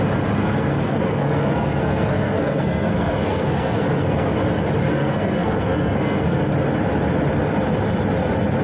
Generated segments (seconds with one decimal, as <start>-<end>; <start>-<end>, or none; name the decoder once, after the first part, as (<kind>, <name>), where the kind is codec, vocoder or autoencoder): 0.4-4.3 (codec, SNAC); 4.9-6.4